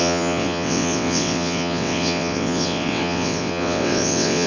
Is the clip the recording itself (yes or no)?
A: no